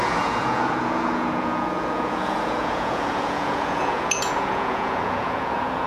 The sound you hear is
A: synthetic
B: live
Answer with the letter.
A